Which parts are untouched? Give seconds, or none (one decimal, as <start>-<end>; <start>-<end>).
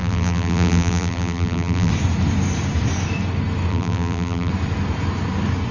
1.9-3.7; 4.5-5.7